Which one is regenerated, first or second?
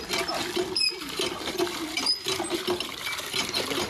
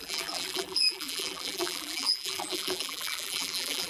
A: second